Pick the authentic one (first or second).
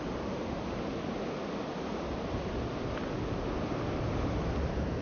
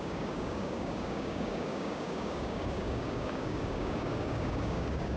first